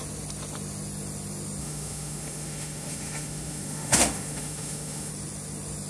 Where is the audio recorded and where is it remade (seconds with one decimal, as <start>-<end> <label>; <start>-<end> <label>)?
0.0-1.6 recorded; 1.6-5.1 remade; 5.1-5.9 recorded